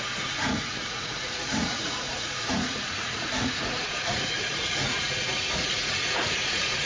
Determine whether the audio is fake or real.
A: fake